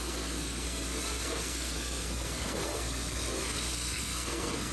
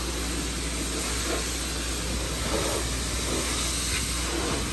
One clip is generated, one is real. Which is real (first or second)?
second